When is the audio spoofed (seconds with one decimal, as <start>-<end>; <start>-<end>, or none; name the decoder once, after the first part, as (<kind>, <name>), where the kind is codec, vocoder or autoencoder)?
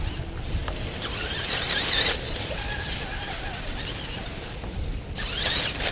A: none